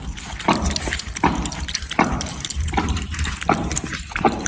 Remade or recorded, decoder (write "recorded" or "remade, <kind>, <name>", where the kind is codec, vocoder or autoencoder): remade, vocoder, BigVGAN v2